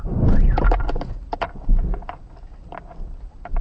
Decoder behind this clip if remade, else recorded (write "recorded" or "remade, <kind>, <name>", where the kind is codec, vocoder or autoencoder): recorded